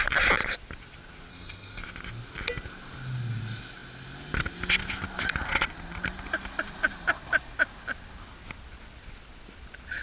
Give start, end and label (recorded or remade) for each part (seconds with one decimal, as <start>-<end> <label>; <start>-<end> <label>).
0.0-1.3 recorded; 1.3-1.8 remade; 1.8-10.0 recorded